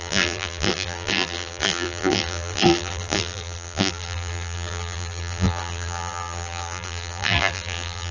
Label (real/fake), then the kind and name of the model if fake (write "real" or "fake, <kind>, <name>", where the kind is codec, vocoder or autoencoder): fake, vocoder, BigVGAN v2